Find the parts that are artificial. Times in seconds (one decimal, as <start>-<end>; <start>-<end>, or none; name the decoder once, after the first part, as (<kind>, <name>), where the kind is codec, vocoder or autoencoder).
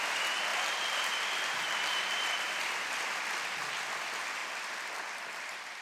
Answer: 0.5-4.0 (vocoder, BigVGAN v2); 4.4-5.8